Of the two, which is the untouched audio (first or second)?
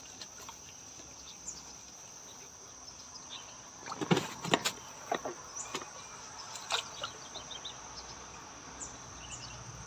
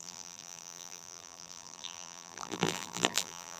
first